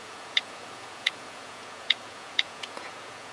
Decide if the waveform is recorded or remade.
remade